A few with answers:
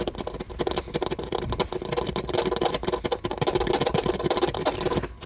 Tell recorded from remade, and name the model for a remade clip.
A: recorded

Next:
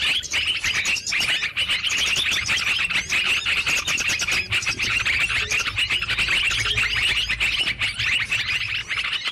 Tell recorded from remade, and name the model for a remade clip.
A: recorded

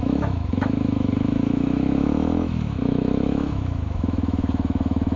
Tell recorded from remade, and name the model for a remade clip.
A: remade, autoencoder, DAC-VAE